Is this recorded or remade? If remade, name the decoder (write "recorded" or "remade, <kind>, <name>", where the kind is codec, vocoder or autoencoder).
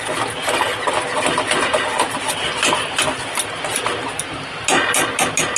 recorded